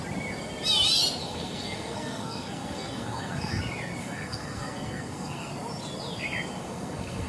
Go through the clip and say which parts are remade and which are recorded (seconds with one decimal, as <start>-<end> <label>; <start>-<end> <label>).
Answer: 0.0-1.2 recorded; 1.2-3.6 remade; 3.6-4.0 recorded; 4.0-5.5 remade; 5.5-6.6 recorded; 6.6-7.3 remade